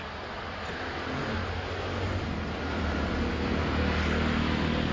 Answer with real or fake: real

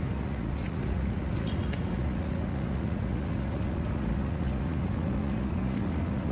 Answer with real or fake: fake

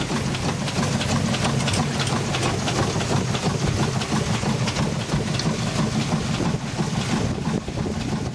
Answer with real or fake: real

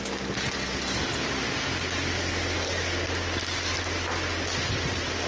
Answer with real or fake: real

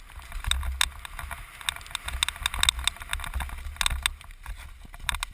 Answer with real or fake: real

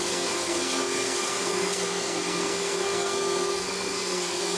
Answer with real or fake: fake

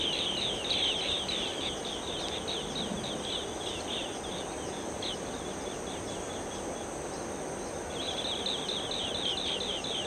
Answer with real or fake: real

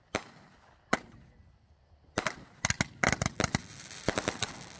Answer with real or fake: real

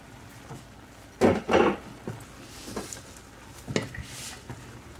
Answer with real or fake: real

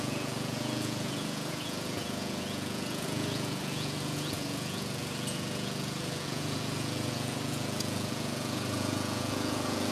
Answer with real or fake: fake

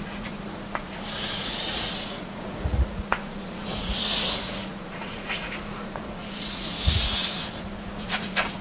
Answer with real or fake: fake